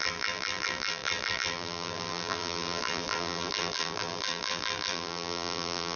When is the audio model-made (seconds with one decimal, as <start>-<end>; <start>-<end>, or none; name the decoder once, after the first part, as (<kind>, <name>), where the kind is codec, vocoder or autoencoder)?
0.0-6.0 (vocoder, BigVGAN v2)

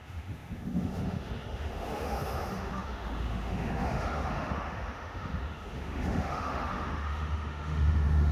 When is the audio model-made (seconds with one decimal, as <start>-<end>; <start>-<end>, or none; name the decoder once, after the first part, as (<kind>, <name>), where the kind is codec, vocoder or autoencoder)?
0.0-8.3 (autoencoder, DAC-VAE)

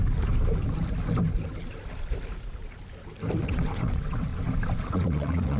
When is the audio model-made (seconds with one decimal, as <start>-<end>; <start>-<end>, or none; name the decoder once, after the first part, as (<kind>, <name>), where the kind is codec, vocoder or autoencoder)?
3.4-4.3 (vocoder, WaveNeXt); 4.8-5.6

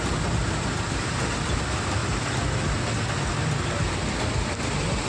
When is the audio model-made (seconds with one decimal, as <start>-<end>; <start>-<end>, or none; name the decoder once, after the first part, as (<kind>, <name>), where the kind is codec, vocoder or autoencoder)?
none